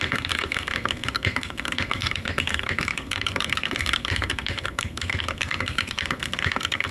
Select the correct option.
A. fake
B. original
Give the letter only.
A